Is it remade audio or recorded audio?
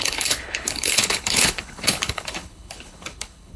remade